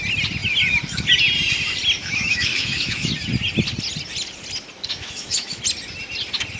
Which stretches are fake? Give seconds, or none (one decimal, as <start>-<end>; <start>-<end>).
2.0-3.1; 4.9-5.6